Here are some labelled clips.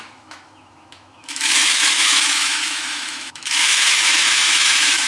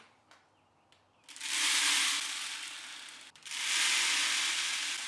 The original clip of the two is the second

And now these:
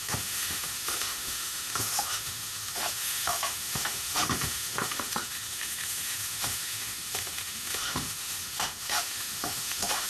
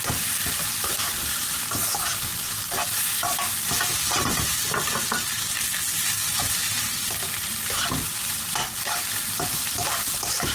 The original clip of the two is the second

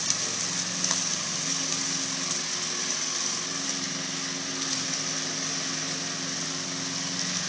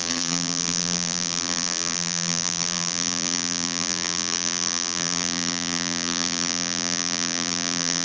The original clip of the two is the first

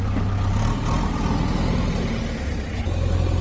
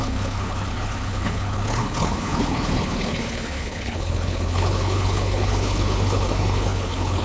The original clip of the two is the first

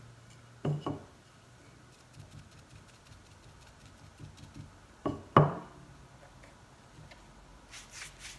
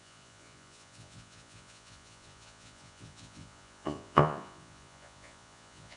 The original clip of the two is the first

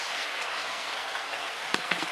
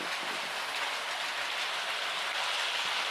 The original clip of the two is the second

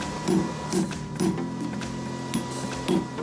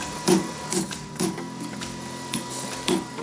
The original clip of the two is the first